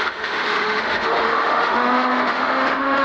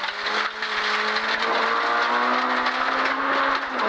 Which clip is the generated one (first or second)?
first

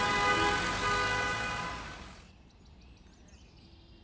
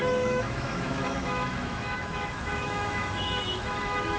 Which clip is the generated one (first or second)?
second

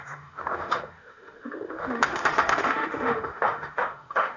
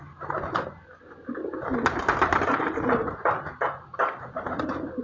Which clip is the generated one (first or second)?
first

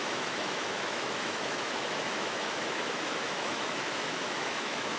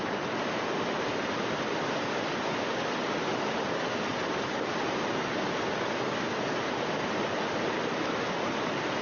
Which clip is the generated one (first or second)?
first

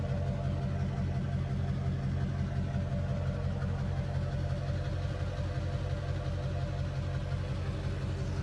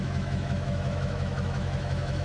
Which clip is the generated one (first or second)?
second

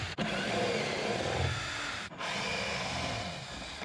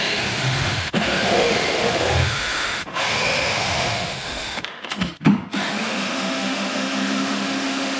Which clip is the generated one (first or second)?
second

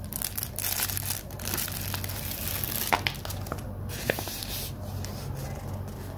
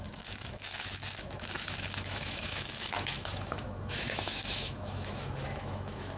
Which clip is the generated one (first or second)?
second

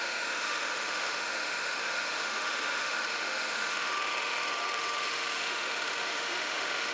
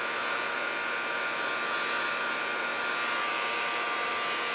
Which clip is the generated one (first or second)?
first